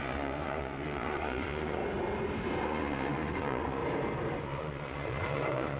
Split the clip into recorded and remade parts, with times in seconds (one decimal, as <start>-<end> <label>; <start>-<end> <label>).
0.0-1.8 remade; 1.8-2.6 recorded; 2.6-3.8 remade; 3.8-4.4 recorded; 4.4-5.8 remade